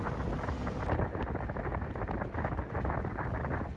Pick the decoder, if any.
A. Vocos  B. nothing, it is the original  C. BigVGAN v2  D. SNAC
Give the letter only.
B